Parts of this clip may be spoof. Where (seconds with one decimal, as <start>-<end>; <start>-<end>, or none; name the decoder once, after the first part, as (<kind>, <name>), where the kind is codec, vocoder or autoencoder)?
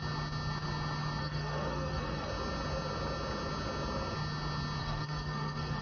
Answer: 1.2-2.3 (codec, SNAC); 4.8-5.8